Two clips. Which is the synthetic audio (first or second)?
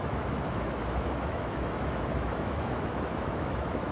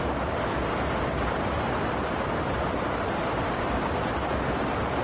first